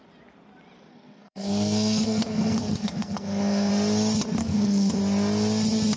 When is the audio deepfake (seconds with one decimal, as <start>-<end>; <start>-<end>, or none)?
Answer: 0.9-3.7; 4.4-5.0